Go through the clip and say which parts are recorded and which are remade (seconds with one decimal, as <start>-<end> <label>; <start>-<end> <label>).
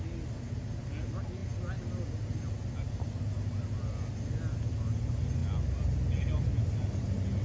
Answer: 0.0-7.4 recorded